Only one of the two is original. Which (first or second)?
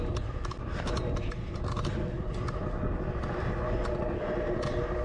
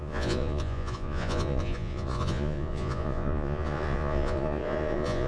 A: first